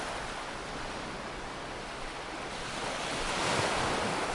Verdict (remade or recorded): recorded